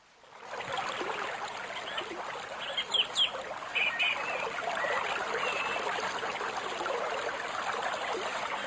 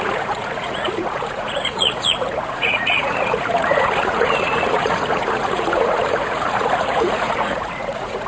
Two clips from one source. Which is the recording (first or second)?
first